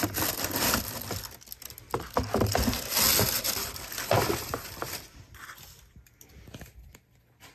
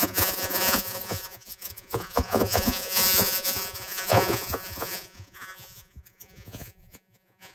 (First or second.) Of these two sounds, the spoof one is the second